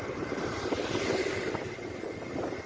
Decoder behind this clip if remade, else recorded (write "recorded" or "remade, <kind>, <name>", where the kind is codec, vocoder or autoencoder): recorded